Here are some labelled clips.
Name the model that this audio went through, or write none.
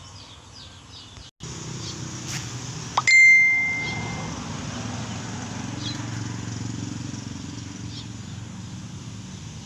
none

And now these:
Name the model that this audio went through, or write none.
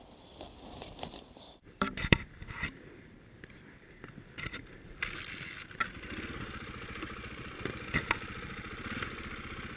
vocoder, BigVGAN v2